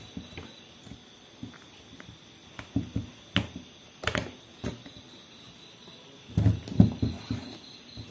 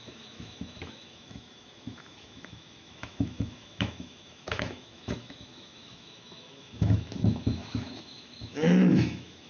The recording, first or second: first